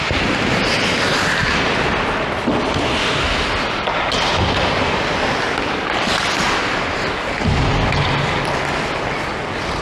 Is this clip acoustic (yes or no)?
yes